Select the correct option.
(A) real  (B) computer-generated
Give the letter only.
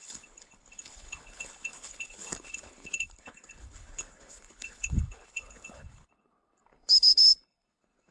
B